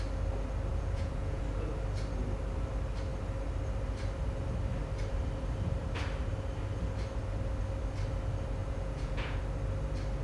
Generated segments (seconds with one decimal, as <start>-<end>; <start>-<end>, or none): 0.7-1.4; 8.6-9.4